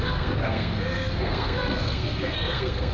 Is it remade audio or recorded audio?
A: remade